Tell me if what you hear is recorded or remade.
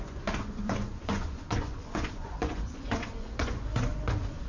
remade